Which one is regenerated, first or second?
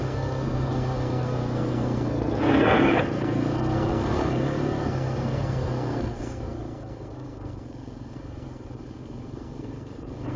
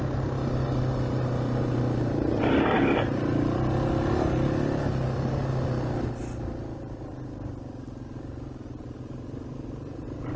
first